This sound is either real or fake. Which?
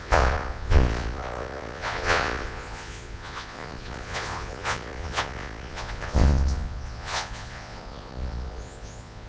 fake